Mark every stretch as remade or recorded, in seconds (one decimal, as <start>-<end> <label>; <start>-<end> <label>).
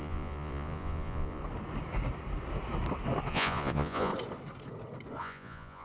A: 0.0-1.4 remade; 1.4-3.3 recorded; 3.3-4.1 remade; 4.1-5.2 recorded; 5.2-5.8 remade